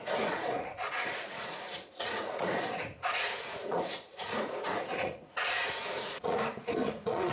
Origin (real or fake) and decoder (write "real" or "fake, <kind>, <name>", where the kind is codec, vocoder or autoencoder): fake, vocoder, Vocos